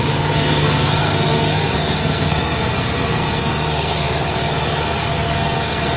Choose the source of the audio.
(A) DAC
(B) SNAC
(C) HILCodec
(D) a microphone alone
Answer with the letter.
B